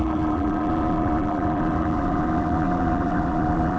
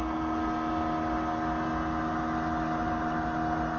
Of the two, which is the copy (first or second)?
first